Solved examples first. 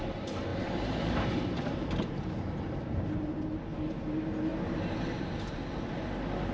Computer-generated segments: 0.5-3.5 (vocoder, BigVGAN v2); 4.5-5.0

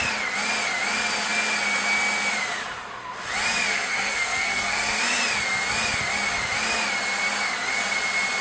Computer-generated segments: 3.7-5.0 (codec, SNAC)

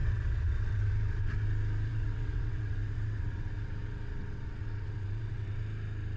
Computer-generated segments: 0.0-0.9 (vocoder, WaveNeXt); 1.9-5.6

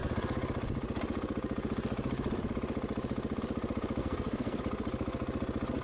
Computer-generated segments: 4.0-4.6 (codec, SNAC)